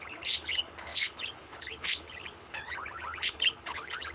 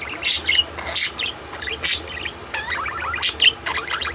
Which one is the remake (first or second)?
first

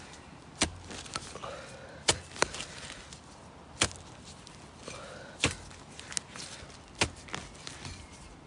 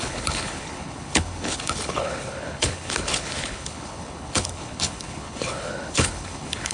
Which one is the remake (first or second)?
second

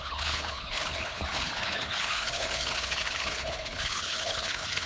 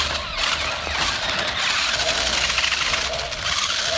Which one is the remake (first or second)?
first